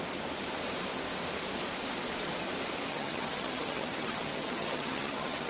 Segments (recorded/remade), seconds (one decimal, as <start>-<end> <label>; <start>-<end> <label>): 0.0-2.9 recorded; 2.9-5.5 remade

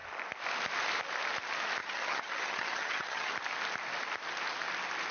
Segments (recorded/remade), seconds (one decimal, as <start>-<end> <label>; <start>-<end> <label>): 0.0-1.8 recorded; 1.8-3.3 remade; 3.3-5.1 recorded

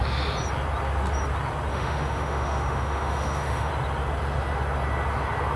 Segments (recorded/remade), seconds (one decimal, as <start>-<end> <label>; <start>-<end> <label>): 0.0-1.7 recorded; 1.7-3.7 remade; 3.7-5.6 recorded

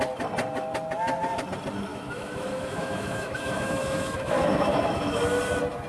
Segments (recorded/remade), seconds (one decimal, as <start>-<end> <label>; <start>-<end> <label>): 0.0-1.9 recorded; 1.9-5.4 remade; 5.4-5.9 recorded

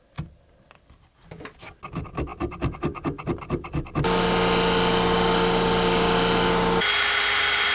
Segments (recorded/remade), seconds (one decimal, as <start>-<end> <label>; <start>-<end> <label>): 0.0-7.7 recorded